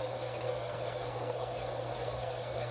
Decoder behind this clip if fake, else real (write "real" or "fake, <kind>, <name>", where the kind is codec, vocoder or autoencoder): fake, codec, SNAC